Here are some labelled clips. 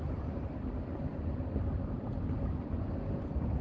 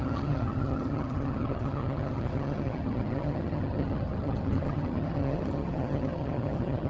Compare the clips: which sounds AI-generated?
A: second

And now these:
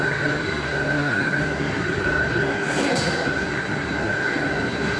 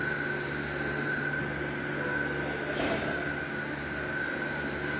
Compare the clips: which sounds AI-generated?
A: first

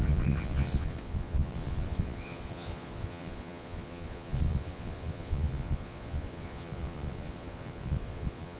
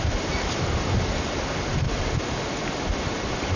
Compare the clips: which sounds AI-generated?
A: first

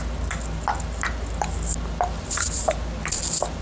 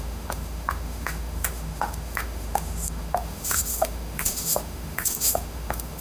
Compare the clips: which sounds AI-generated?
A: second